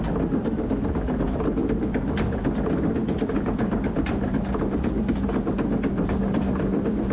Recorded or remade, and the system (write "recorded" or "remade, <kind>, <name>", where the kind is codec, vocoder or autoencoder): recorded